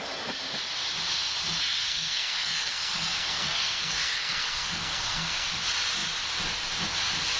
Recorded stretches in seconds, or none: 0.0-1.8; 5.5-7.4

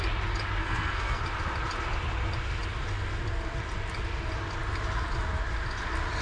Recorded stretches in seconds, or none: 0.0-0.6; 1.2-6.2

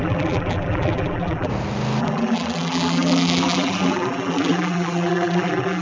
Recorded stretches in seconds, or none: 1.5-2.0